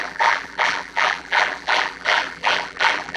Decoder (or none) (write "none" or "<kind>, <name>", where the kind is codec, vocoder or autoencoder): vocoder, BigVGAN v2